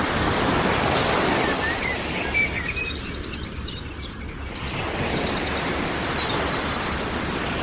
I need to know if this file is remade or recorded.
remade